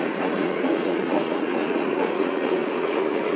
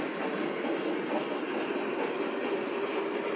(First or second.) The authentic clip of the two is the second